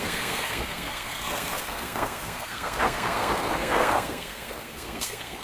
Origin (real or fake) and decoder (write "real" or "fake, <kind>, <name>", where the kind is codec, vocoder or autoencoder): fake, codec, SNAC